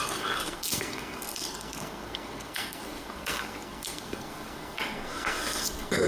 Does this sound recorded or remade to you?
remade